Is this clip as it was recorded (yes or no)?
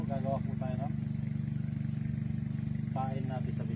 yes